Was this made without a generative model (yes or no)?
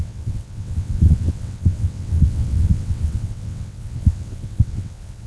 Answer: no